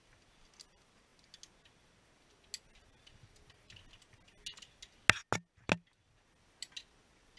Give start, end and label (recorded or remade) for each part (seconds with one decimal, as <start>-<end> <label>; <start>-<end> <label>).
0.0-7.4 recorded